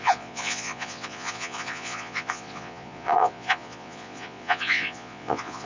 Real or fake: fake